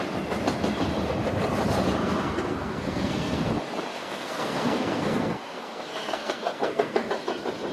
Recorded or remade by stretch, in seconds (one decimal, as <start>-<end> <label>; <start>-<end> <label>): 0.0-2.0 recorded; 2.0-3.5 remade; 3.5-3.9 recorded; 3.9-7.1 remade; 7.1-7.7 recorded